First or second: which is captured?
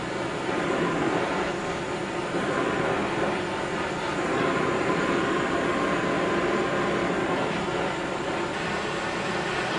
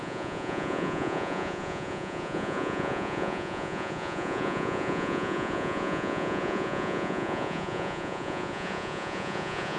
first